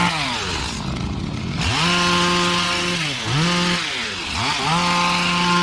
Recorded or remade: recorded